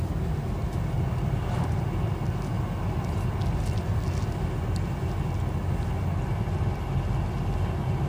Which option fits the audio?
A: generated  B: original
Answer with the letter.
B